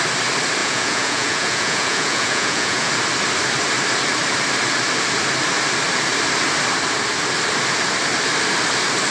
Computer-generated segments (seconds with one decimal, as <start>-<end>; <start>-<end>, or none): 0.6-2.9